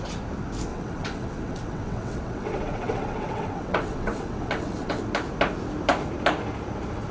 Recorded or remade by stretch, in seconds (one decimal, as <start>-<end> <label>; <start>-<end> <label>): 0.0-0.7 recorded; 0.7-5.0 remade; 5.0-7.1 recorded